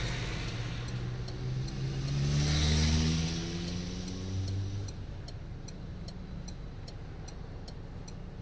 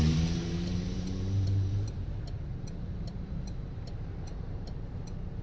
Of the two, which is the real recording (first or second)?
first